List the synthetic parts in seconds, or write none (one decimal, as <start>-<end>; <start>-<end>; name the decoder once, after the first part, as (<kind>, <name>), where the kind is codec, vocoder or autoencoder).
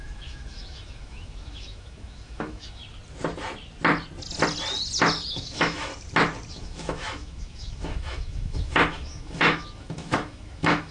0.0-2.8 (autoencoder, DAC-VAE); 5.3-5.9; 6.5-10.9